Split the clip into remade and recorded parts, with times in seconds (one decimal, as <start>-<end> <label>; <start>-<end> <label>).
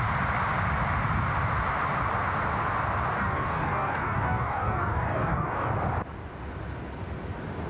0.0-3.2 recorded; 3.2-5.7 remade; 5.7-7.7 recorded